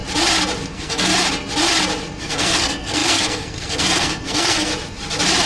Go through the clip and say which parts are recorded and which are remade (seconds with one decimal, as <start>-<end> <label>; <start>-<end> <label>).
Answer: 0.0-0.7 recorded; 0.7-1.1 remade; 1.1-2.2 recorded; 2.2-4.7 remade; 4.7-5.5 recorded